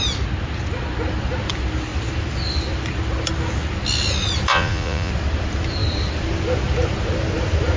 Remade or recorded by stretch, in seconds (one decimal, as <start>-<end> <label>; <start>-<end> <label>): 0.0-4.5 recorded; 4.5-5.1 remade; 5.1-7.8 recorded